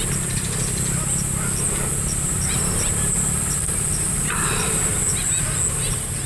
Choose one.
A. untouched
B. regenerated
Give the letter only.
A